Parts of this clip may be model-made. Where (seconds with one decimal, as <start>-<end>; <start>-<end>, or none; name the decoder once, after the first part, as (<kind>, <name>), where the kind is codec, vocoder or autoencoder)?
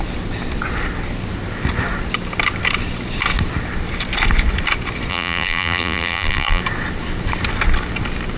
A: 5.1-6.6 (vocoder, BigVGAN v2)